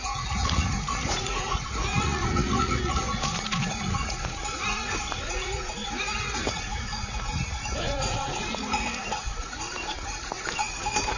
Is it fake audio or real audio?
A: fake